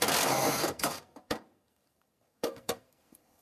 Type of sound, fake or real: fake